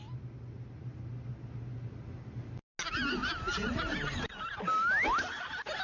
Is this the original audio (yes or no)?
yes